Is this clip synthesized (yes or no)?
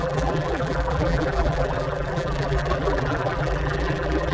yes